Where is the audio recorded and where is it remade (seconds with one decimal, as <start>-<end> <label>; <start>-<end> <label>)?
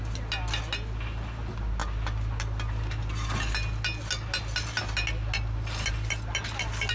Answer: 0.0-6.9 recorded